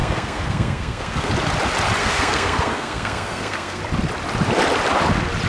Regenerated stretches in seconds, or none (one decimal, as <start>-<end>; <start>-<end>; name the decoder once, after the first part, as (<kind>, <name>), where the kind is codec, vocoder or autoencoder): 0.0-1.3 (codec, SNAC); 2.0-3.8